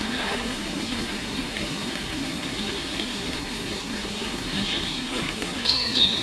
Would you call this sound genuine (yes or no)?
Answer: no